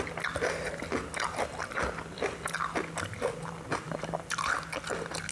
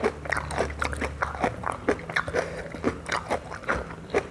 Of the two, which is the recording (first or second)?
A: first